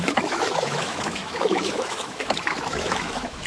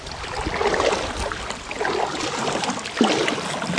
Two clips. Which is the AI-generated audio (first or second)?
first